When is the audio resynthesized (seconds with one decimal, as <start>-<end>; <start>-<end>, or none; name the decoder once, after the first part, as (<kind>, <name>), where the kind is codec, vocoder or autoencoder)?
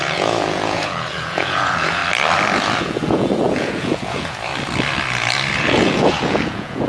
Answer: 0.0-2.0 (vocoder, Vocos); 2.8-4.5; 5.6-6.9